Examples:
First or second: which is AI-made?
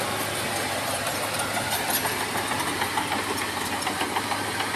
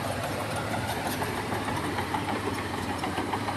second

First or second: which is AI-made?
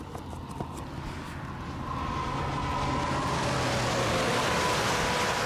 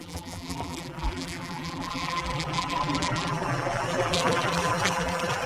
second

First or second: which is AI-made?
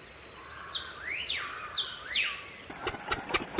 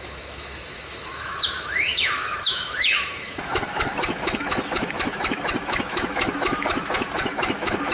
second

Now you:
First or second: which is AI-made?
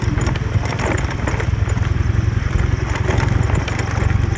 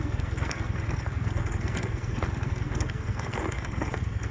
second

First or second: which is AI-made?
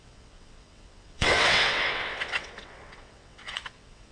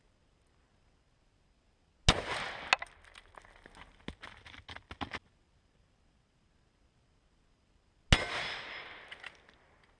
first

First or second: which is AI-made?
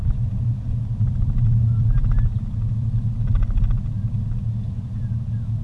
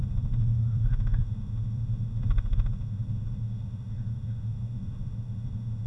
second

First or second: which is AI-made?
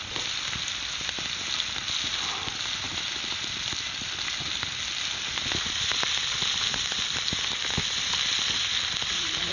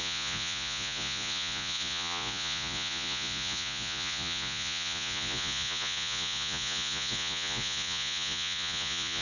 second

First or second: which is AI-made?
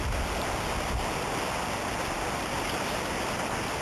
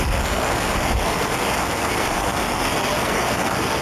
second